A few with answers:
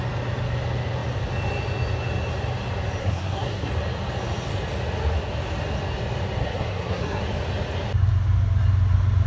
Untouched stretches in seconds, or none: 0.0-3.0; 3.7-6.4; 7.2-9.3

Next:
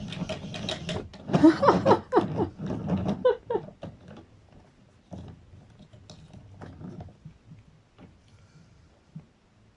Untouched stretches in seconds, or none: 0.0-9.8

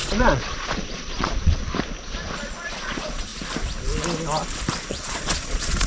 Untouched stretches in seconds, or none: 1.6-2.5; 3.3-4.9

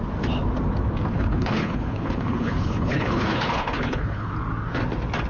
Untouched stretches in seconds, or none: 0.0-1.1; 4.3-5.3